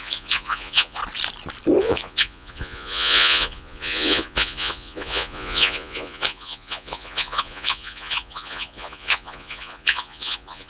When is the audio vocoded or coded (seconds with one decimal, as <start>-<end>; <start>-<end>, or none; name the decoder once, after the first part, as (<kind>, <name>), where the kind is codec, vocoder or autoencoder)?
0.0-1.0 (vocoder, Vocos); 1.8-10.7